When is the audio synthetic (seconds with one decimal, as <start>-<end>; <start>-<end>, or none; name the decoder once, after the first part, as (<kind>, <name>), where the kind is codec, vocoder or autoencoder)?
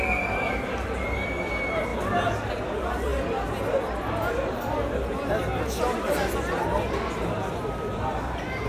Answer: none